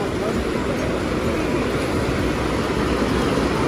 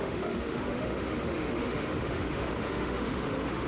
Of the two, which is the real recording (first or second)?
first